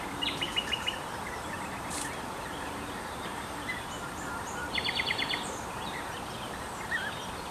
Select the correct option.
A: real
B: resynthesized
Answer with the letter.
B